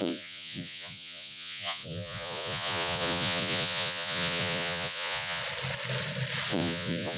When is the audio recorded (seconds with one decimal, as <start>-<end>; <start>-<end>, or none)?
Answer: 5.4-6.5